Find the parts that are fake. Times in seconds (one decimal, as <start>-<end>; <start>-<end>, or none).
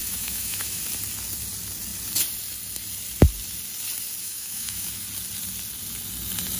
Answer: 0.0-0.8; 4.2-5.0